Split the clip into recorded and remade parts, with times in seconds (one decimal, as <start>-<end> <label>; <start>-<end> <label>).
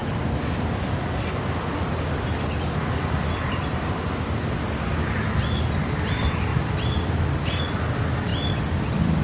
0.0-9.2 recorded